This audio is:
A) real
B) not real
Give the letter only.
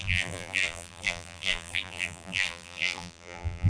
B